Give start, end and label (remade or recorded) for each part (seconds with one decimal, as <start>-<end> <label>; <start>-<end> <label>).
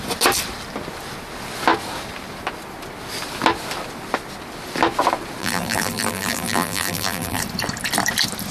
0.0-5.4 recorded; 5.4-7.4 remade; 7.4-8.5 recorded